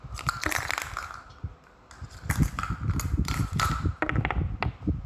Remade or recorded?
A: recorded